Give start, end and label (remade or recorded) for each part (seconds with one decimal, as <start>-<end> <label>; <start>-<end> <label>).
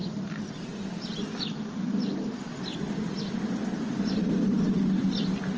0.0-5.6 recorded